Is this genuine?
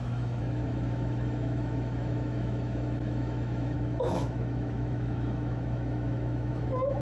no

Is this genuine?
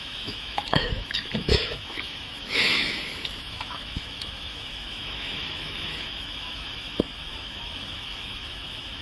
no